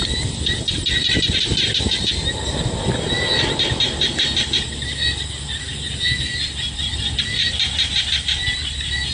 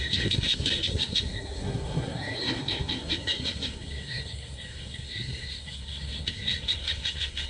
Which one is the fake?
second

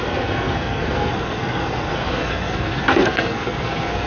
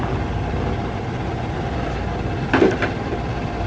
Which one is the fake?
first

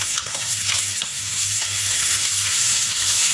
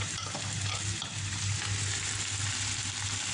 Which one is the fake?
first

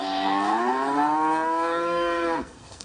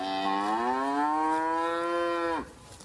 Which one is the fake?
first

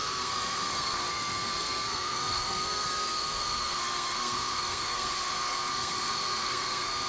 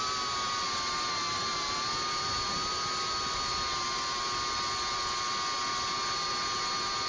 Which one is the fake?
first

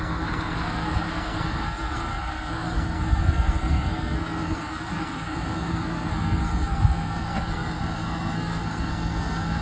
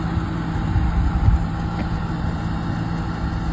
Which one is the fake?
first